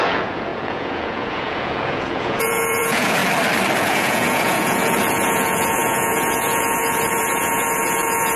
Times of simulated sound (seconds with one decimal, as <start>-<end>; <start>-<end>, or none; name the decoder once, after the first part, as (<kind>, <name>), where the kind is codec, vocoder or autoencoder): 0.0-3.2 (vocoder, Vocos); 3.8-8.4